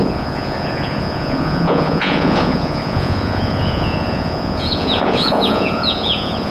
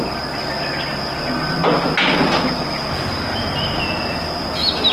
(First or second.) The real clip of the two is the second